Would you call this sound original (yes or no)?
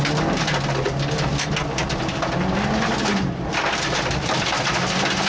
yes